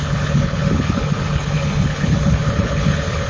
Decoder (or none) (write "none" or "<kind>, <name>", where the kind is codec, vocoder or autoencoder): codec, HILCodec